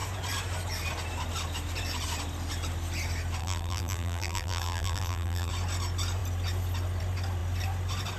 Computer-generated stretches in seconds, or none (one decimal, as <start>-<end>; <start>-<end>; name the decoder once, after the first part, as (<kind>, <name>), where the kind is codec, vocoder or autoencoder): 3.4-5.5 (vocoder, BigVGAN v2)

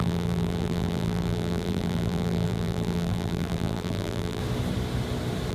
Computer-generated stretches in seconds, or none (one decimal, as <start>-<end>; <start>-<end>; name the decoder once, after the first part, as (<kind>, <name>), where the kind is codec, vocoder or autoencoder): 0.0-4.4 (vocoder, BigVGAN v2)

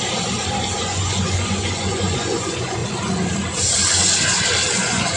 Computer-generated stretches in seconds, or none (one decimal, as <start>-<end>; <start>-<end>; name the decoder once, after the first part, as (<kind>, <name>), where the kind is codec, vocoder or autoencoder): 0.8-2.8 (vocoder, Vocos); 4.7-5.2

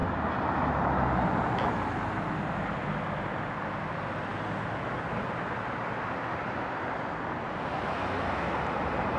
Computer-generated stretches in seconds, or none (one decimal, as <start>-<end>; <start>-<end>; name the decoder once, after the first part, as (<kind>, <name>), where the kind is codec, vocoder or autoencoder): none

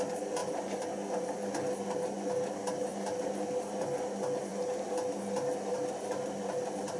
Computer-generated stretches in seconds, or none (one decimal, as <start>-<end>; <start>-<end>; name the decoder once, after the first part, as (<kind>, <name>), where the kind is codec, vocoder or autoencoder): none

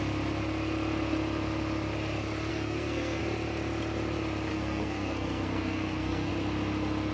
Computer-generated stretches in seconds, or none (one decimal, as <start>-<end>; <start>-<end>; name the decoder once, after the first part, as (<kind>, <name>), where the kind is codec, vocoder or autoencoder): 2.5-3.2 (codec, SNAC); 4.5-6.3

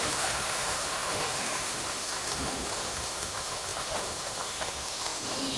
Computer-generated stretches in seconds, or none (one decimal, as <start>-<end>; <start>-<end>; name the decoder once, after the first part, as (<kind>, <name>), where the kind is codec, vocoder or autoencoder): 0.0-5.6 (autoencoder, DAC-VAE)